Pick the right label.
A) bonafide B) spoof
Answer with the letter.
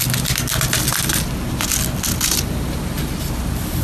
A